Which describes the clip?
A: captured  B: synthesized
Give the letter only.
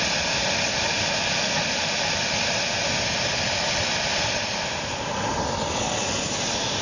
A